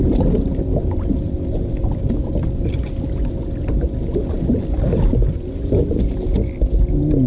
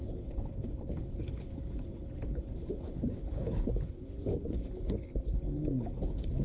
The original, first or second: first